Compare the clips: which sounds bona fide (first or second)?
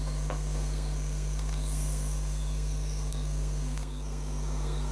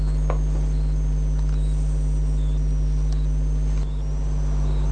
second